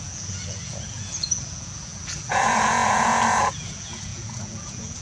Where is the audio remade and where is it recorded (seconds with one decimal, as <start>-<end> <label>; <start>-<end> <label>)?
0.0-5.0 remade